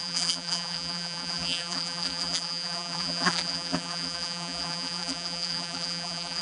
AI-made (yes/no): yes